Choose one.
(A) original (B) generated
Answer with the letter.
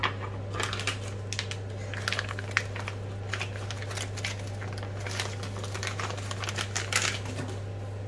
A